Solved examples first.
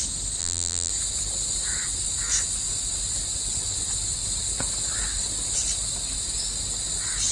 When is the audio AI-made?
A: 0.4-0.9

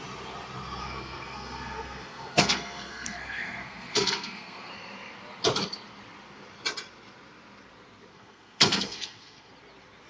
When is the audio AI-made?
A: 0.8-4.7; 8.1-9.5

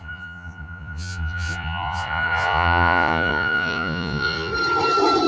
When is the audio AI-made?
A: 0.0-4.5

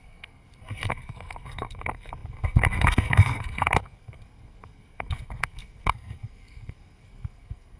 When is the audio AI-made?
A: 0.0-7.8